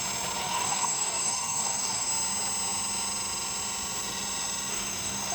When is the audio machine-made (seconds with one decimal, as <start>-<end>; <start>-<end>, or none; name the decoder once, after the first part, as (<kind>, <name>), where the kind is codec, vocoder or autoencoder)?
0.4-2.1 (codec, DAC); 4.7-5.3